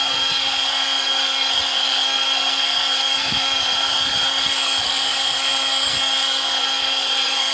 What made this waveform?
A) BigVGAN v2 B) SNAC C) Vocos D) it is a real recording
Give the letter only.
B